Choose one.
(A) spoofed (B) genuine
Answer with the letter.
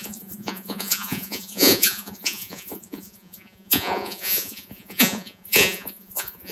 A